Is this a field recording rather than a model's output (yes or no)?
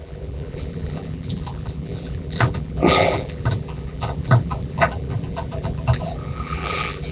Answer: no